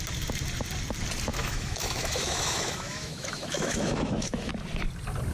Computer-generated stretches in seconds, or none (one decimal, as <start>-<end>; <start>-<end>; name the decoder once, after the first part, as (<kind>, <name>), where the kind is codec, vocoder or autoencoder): 1.3-4.5 (autoencoder, DAC-VAE)